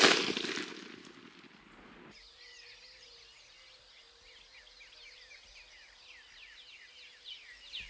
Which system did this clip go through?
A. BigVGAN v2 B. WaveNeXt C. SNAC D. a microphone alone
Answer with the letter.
D